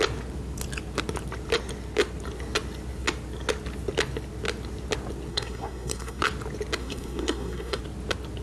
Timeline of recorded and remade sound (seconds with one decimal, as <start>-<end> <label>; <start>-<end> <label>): 0.0-5.3 recorded; 5.3-6.2 remade; 6.2-6.8 recorded; 6.8-7.8 remade; 7.8-8.4 recorded